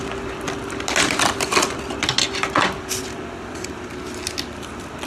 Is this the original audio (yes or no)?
yes